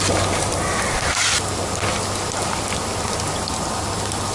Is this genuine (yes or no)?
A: yes